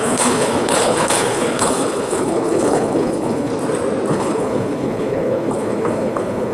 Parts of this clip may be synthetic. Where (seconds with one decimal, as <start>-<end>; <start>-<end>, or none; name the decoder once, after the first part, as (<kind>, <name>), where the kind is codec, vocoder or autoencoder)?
0.0-3.5 (codec, HILCodec); 4.1-6.5